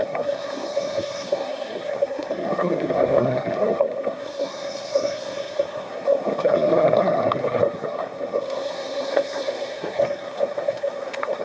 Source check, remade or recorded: remade